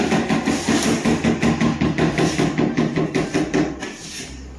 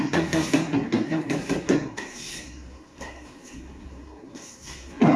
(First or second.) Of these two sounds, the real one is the first